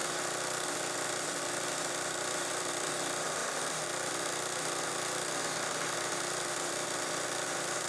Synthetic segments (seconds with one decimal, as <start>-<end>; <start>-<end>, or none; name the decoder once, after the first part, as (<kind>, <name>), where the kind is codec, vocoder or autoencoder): none